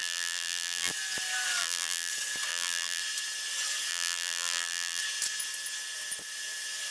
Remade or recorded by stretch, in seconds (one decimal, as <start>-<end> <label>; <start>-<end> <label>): 0.0-0.9 remade; 0.9-1.6 recorded; 1.6-2.1 remade; 2.1-2.5 recorded; 2.5-3.0 remade; 3.0-3.9 recorded; 3.9-5.0 remade; 5.0-6.9 recorded